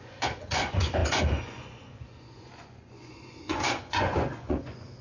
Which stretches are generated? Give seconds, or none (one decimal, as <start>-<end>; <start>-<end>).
0.0-5.0